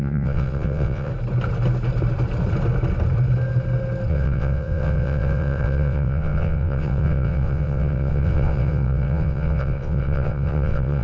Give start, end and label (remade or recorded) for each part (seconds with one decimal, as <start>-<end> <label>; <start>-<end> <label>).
0.0-1.1 remade; 1.1-4.1 recorded; 4.1-11.0 remade